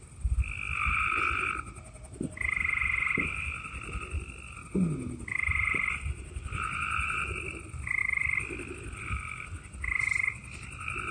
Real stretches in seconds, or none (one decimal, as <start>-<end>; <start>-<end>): 0.0-11.1